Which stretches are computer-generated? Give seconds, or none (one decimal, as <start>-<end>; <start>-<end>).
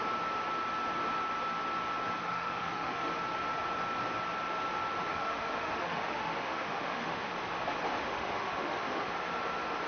2.2-3.1; 5.1-7.3; 8.0-9.1